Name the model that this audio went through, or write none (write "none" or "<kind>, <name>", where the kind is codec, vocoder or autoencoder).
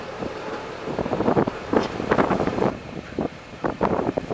vocoder, BigVGAN v2